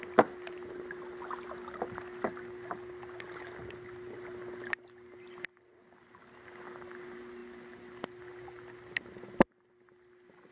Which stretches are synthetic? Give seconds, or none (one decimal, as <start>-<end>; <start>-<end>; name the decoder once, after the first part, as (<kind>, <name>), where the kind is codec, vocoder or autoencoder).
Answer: none